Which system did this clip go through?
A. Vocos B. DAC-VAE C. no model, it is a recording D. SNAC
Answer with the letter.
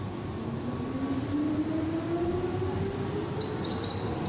C